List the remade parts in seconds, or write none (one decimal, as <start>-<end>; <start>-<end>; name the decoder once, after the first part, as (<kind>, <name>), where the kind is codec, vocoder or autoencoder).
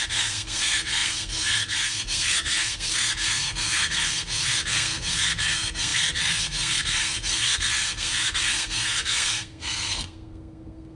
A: 0.0-11.0 (codec, SNAC)